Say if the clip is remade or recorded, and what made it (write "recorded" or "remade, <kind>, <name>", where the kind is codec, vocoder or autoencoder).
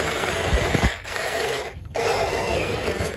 remade, codec, SNAC